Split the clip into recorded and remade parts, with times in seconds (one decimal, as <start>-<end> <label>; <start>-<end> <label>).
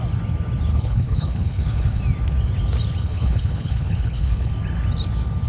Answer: 0.0-0.7 recorded; 0.7-2.0 remade; 2.0-3.0 recorded; 3.0-4.5 remade; 4.5-5.5 recorded